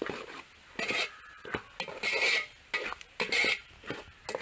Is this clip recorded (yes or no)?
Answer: yes